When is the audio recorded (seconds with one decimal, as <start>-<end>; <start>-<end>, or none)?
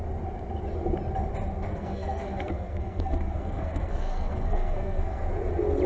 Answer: 0.0-1.7; 5.2-5.9